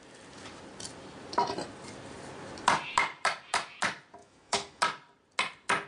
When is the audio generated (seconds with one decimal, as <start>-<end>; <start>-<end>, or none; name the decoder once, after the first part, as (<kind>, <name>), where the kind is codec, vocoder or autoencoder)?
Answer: 4.2-4.8 (autoencoder, DAC-VAE)